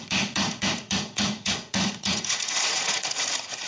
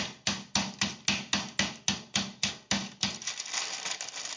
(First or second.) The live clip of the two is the second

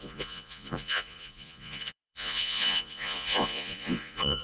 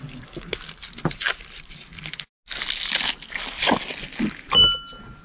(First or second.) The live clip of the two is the second